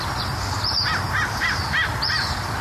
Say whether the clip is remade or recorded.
recorded